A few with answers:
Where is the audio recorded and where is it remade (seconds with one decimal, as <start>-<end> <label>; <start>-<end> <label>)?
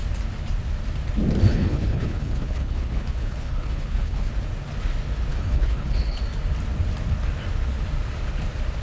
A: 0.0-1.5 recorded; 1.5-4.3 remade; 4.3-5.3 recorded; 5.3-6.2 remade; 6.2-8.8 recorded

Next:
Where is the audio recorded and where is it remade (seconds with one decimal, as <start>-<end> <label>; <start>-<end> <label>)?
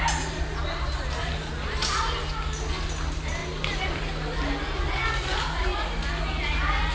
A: 0.0-3.4 recorded; 3.4-4.1 remade; 4.1-6.9 recorded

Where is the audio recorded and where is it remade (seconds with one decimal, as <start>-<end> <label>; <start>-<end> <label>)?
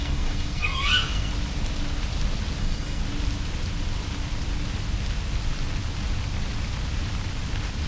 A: 0.0-1.3 remade; 1.3-2.6 recorded; 2.6-3.0 remade; 3.0-7.9 recorded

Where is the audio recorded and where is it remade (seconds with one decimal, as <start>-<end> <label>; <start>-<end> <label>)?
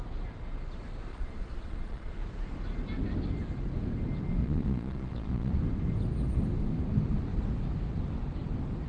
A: 0.0-1.1 recorded; 1.1-2.1 remade; 2.1-4.4 recorded; 4.4-5.5 remade; 5.5-8.9 recorded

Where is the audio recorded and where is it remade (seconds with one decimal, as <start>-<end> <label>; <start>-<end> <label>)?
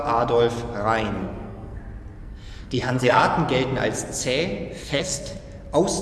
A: 0.0-1.2 recorded; 1.2-1.8 remade; 1.8-2.2 recorded; 2.2-3.2 remade; 3.2-4.8 recorded; 4.8-5.4 remade; 5.4-6.0 recorded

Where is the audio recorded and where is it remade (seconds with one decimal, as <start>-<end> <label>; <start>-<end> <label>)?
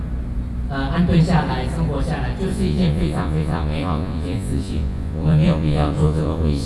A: 0.0-2.5 recorded; 2.5-6.7 remade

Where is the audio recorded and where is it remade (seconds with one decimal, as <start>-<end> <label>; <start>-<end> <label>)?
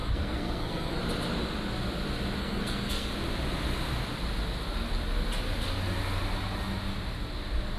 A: 0.0-1.0 remade; 1.0-2.4 recorded; 2.4-3.1 remade; 3.1-7.8 recorded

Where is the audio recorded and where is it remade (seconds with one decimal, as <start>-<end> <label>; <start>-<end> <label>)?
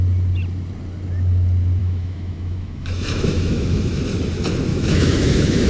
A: 0.0-1.8 recorded; 1.8-4.0 remade; 4.0-4.7 recorded; 4.7-5.7 remade